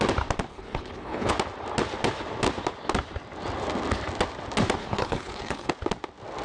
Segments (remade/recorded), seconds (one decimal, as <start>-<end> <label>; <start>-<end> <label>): 0.0-0.5 recorded; 0.5-1.3 remade; 1.3-4.8 recorded; 4.8-5.7 remade; 5.7-6.4 recorded